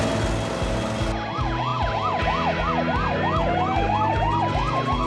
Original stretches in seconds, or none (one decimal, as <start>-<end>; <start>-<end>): 0.0-5.1